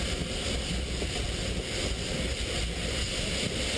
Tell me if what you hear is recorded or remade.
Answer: recorded